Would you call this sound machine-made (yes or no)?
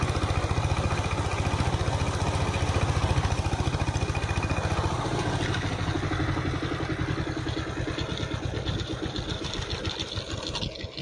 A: no